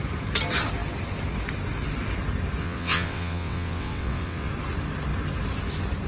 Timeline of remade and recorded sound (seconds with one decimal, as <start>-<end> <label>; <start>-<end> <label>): 0.0-2.6 recorded; 2.6-4.5 remade; 4.5-6.1 recorded